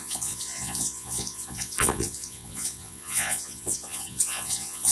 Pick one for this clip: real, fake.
fake